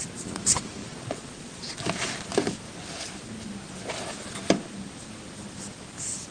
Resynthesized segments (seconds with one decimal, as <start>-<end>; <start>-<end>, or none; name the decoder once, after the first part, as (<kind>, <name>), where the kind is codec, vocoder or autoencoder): 0.8-1.7 (vocoder, Vocos)